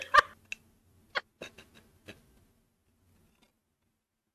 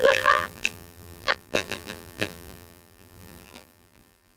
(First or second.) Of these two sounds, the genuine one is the first